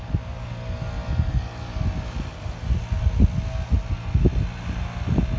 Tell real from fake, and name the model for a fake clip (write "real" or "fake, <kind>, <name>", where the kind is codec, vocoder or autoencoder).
real